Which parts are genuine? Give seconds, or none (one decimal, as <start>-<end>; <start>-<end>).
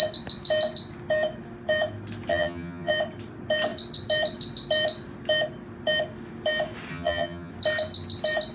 0.0-2.3; 2.9-6.9; 7.5-8.5